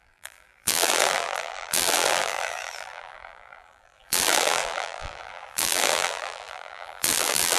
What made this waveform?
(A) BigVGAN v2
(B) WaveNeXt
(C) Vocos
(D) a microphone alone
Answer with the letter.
A